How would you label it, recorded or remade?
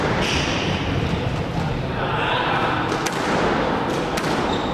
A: remade